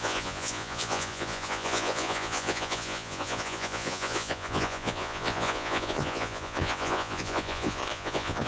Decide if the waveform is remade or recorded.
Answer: remade